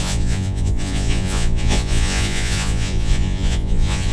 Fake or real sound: fake